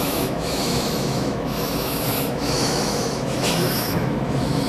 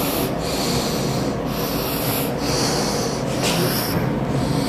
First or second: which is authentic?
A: second